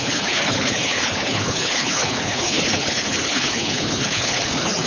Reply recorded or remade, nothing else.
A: remade